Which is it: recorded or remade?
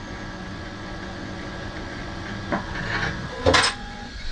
remade